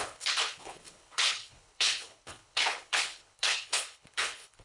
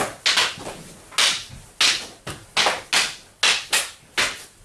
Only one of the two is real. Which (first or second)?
second